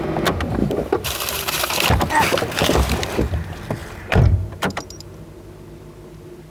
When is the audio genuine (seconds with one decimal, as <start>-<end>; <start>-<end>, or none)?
0.0-0.6; 1.9-3.8; 5.2-6.5